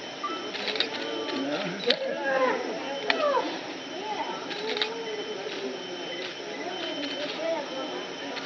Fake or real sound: real